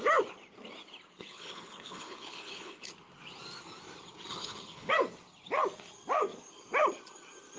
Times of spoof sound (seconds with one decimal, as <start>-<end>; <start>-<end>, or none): 1.2-2.9; 4.3-4.9